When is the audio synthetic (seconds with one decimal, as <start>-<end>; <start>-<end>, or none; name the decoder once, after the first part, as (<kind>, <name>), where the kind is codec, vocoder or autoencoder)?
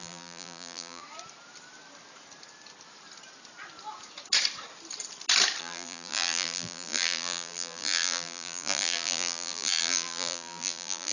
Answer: 0.0-1.0 (vocoder, BigVGAN v2); 5.6-11.1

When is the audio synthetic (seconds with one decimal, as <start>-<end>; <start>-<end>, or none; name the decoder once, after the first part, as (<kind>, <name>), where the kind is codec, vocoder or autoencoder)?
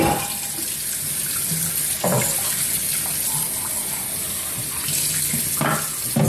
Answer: none